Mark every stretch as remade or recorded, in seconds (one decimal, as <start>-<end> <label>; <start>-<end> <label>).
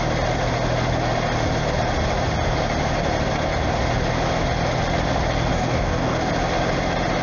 0.0-5.5 recorded; 5.5-6.3 remade; 6.3-7.2 recorded